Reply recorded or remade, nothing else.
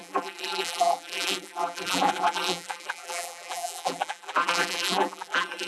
remade